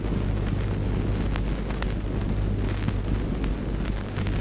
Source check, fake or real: real